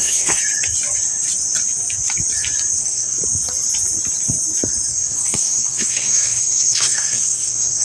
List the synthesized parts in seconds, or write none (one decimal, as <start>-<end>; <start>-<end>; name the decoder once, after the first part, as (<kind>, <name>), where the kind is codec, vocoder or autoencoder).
0.0-0.4 (codec, SNAC); 2.8-3.2; 4.9-7.8

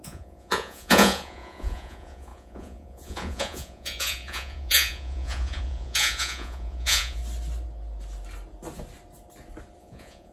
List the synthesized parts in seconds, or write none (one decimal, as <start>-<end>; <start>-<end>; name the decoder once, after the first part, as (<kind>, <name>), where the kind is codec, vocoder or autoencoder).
0.0-7.2 (vocoder, Vocos); 9.8-10.3

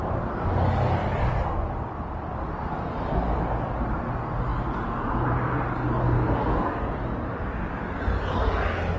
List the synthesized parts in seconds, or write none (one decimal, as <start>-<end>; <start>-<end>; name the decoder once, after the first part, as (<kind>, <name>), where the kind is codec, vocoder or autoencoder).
none

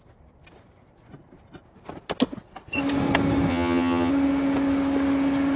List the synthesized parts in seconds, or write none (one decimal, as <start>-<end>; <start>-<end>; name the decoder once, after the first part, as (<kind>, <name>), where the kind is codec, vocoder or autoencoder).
3.5-4.1 (vocoder, HiFi-GAN)

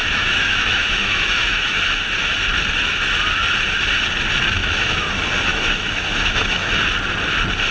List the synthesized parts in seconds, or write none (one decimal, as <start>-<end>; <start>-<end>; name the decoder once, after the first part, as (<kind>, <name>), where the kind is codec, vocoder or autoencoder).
0.0-1.8 (autoencoder, DAC-VAE); 4.6-5.1; 5.5-6.8

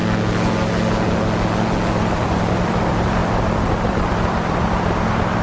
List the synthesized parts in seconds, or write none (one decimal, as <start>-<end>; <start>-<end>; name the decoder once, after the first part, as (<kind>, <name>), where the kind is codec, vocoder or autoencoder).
2.0-3.2 (vocoder, BigVGAN v2); 3.7-5.4

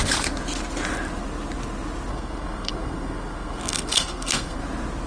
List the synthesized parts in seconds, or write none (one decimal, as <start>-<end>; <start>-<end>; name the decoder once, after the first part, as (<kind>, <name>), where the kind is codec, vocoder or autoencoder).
2.1-4.6 (codec, SNAC)